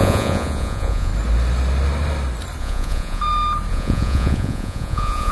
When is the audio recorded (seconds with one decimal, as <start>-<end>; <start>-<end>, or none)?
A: 1.1-2.6; 3.2-3.7